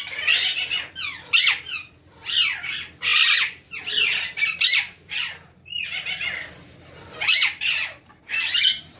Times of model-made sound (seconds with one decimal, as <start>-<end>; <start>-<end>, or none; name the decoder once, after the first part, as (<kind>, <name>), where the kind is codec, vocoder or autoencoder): 0.0-9.0 (vocoder, BigVGAN v2)